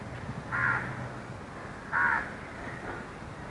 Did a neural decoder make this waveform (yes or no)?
no